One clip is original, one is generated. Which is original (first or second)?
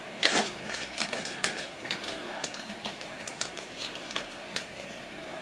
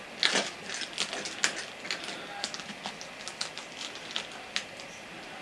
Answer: second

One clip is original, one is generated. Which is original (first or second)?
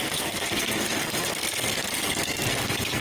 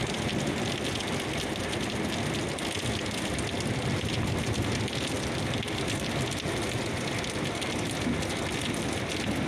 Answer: second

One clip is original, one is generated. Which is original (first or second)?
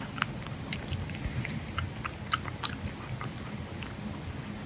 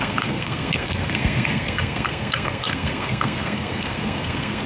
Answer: first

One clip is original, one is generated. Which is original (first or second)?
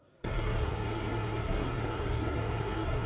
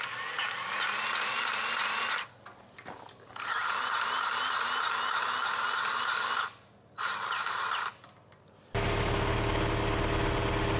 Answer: second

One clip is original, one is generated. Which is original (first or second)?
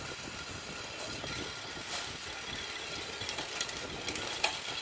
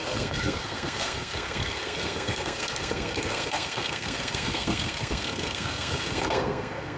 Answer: first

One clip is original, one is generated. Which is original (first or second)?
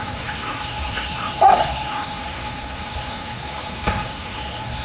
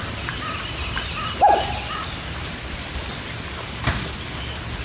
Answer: second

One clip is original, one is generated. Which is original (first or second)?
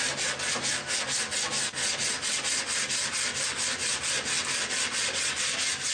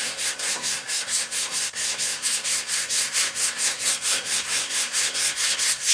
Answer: first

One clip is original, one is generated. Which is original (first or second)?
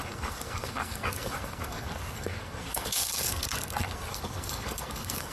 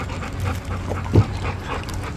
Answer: second